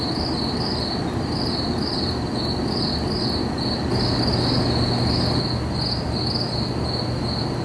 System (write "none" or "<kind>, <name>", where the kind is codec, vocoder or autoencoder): none